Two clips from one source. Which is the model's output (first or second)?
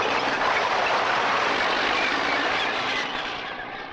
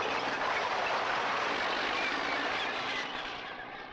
first